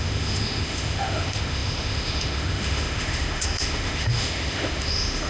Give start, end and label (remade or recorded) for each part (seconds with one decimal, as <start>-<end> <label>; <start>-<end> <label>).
0.0-5.3 remade